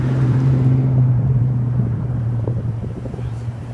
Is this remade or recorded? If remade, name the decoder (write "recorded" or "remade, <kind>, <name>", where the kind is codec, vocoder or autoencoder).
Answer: remade, vocoder, BigVGAN v2